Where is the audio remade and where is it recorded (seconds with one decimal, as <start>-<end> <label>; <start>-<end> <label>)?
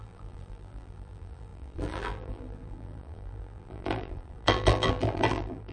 0.0-5.7 remade